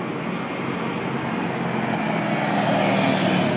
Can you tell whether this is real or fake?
real